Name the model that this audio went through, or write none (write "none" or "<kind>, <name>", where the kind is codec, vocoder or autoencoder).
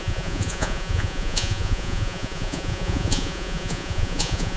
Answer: vocoder, Vocos